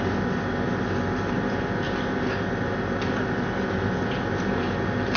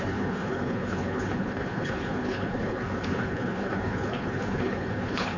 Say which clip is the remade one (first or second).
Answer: second